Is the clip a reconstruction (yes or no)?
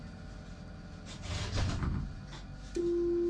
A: no